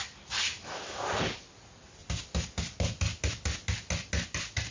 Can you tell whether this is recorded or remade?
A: recorded